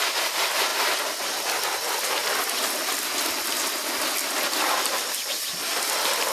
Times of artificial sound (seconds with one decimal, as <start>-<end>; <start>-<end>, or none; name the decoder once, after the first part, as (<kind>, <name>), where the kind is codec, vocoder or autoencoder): none

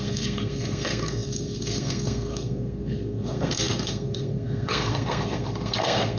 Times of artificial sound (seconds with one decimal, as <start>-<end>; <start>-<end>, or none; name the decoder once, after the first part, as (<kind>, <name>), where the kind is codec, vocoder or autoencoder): 0.0-6.2 (codec, SNAC)

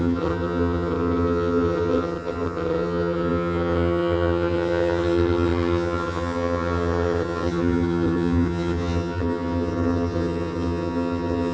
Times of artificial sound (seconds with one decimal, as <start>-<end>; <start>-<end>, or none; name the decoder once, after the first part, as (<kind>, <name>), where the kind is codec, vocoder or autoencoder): 0.0-11.5 (vocoder, HiFi-GAN)

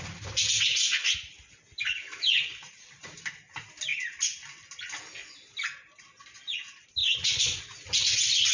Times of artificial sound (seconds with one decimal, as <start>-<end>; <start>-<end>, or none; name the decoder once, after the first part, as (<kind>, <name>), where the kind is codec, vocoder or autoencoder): 7.0-7.6 (vocoder, Vocos)

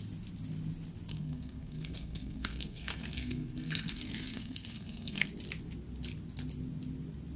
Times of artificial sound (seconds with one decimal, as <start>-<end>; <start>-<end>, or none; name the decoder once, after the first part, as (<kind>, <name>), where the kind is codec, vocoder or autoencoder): 1.1-5.3 (codec, SNAC)

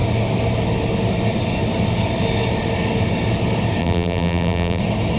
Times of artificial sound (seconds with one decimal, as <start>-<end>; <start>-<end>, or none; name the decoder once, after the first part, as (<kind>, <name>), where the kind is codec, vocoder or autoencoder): 3.8-4.8 (vocoder, BigVGAN v2)

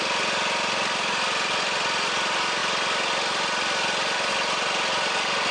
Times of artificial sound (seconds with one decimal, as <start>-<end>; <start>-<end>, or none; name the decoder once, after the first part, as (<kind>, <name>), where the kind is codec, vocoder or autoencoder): none

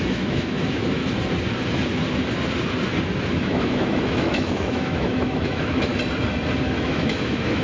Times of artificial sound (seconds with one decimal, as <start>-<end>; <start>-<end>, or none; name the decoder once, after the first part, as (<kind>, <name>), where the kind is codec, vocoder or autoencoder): 0.0-1.0 (autoencoder, DAC-VAE); 3.3-5.9; 6.7-7.6